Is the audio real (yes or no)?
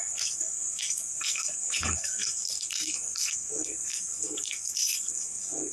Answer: no